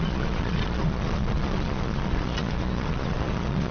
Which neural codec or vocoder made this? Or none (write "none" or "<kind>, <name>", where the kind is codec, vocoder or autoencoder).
vocoder, Vocos